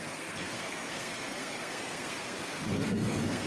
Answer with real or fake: fake